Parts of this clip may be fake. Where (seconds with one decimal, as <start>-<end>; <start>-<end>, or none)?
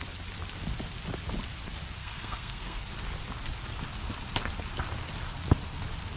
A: 2.0-2.8